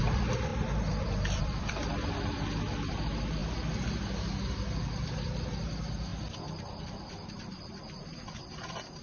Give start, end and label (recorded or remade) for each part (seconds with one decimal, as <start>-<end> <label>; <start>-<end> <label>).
0.0-3.4 remade; 3.4-5.0 recorded; 5.0-6.1 remade; 6.1-6.7 recorded; 6.7-9.0 remade